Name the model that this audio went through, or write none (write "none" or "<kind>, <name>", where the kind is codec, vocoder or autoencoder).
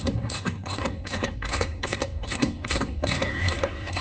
codec, SNAC